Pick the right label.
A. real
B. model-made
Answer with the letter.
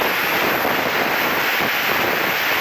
A